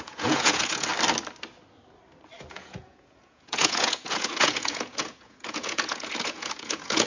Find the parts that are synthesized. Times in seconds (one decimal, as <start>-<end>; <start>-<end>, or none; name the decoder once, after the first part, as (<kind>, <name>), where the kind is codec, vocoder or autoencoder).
0.0-0.9 (vocoder, Vocos); 2.5-7.1